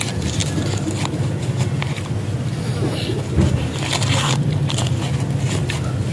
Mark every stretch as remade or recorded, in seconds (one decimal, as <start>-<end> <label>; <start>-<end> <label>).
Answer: 0.0-6.1 recorded